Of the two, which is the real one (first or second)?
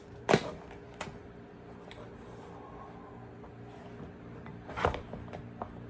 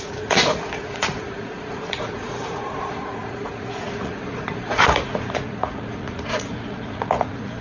first